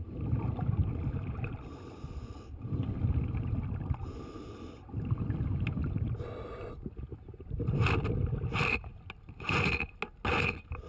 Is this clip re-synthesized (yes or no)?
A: no